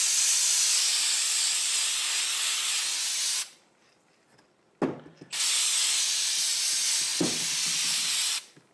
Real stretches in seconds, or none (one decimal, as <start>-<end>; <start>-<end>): 0.0-8.7